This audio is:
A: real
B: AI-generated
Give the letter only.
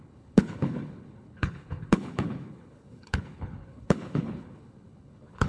B